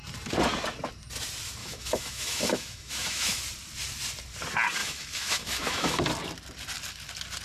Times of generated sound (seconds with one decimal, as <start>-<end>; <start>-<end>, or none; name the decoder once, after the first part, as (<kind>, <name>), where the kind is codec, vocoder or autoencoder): 1.6-3.4 (autoencoder, DAC-VAE); 4.8-6.0